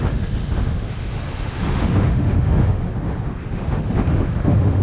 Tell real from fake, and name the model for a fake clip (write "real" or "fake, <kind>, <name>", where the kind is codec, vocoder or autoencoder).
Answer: fake, autoencoder, DAC-VAE